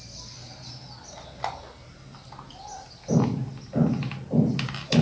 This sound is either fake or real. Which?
real